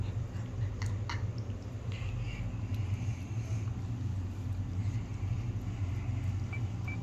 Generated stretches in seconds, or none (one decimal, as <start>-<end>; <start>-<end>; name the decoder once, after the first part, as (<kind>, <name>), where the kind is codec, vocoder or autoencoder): none